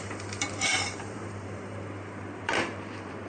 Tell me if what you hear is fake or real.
fake